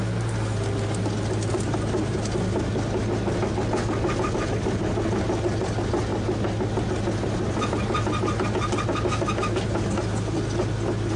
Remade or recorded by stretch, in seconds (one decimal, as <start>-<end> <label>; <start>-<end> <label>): 0.0-11.2 recorded